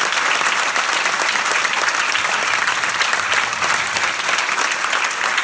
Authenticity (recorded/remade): recorded